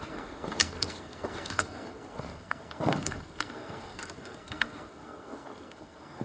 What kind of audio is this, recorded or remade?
remade